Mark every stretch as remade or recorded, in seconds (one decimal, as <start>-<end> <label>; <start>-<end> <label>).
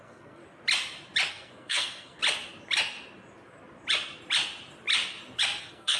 0.0-0.4 remade; 0.4-1.3 recorded; 1.3-2.2 remade; 2.2-5.6 recorded; 5.6-6.0 remade